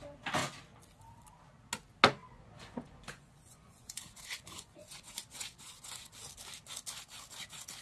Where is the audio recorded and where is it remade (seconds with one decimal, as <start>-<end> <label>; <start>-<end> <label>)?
0.0-2.2 recorded; 2.2-6.1 remade; 6.1-7.8 recorded